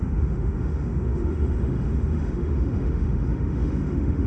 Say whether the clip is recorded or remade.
remade